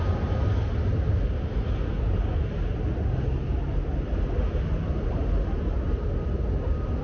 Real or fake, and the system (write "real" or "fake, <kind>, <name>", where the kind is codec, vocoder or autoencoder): real